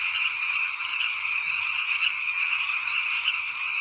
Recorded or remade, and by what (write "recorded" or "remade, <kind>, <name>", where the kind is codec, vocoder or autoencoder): remade, vocoder, HiFi-GAN